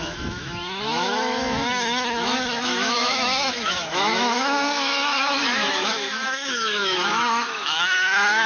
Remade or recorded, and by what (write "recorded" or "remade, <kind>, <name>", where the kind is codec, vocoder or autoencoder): remade, autoencoder, DAC-VAE